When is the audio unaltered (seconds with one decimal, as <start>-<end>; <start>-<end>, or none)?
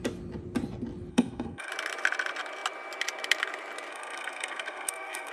0.0-1.1; 1.7-3.9